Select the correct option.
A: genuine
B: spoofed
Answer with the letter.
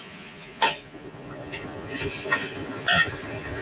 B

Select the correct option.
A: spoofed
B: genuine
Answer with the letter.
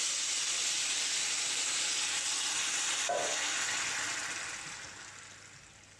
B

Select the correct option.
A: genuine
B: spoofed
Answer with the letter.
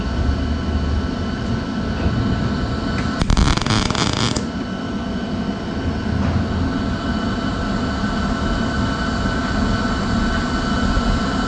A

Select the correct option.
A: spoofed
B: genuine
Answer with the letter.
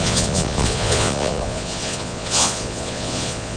A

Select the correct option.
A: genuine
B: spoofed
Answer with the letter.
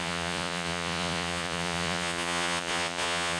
B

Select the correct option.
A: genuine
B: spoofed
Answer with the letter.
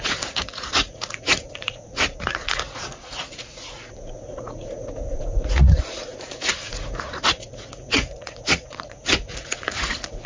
B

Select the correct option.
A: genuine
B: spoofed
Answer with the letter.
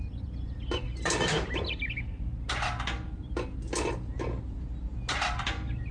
A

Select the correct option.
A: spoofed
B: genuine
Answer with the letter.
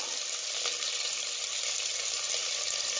B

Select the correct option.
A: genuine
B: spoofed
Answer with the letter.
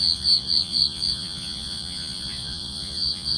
B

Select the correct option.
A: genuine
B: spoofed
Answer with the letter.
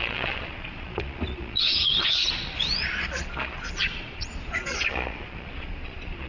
B